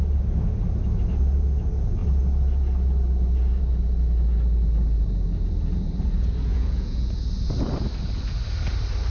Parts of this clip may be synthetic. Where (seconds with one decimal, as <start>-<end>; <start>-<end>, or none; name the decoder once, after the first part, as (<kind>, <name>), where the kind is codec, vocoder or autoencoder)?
6.5-7.1 (vocoder, Vocos)